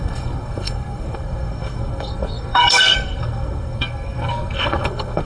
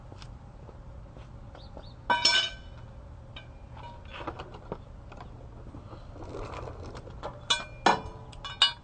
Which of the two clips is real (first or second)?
second